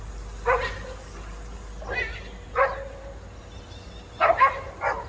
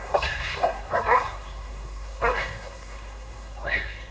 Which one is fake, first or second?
second